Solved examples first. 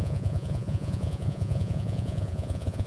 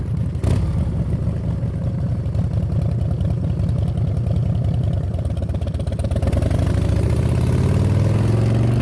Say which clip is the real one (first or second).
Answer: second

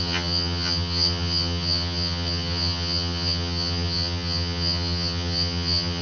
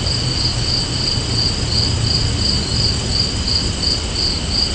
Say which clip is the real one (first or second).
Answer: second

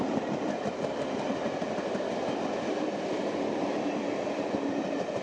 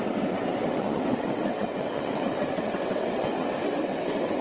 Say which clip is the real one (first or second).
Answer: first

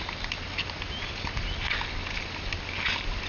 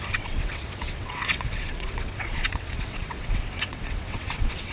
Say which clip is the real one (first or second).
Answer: first